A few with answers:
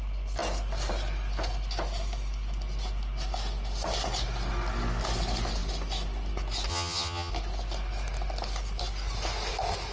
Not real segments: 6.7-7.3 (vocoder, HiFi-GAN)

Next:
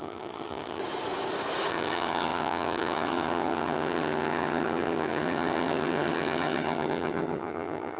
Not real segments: 0.0-0.8 (vocoder, HiFi-GAN); 1.7-8.0

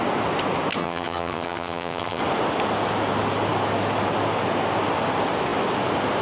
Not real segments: 0.8-2.2 (vocoder, HiFi-GAN)

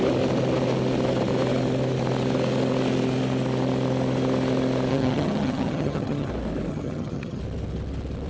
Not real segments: 4.9-6.3 (vocoder, HiFi-GAN); 6.7-7.4